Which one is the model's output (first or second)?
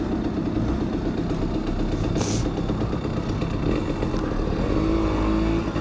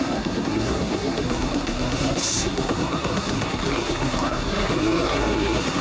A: second